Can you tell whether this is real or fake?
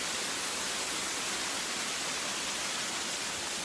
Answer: real